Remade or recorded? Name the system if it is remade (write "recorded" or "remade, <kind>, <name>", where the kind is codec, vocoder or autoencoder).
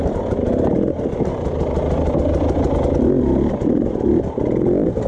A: recorded